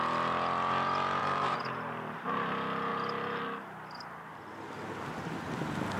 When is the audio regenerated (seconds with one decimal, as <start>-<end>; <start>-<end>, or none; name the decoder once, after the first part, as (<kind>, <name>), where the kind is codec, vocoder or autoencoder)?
1.2-2.5 (vocoder, BigVGAN v2)